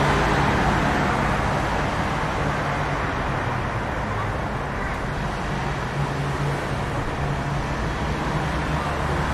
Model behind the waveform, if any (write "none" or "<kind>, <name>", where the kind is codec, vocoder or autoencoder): none